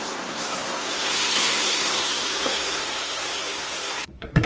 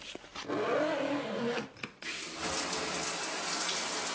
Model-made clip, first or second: first